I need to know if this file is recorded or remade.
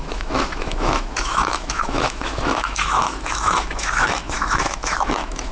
remade